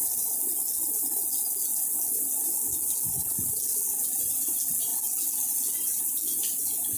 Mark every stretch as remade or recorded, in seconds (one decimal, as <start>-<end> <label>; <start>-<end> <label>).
0.0-7.0 recorded